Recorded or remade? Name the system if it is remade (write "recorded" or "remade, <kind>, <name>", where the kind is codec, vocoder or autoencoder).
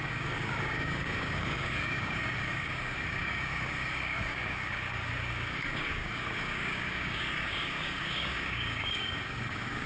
remade, codec, DAC